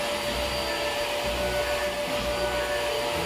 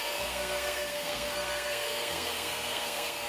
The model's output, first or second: second